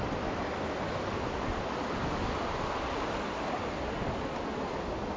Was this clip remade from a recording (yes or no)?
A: no